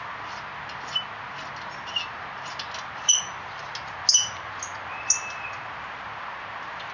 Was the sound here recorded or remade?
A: recorded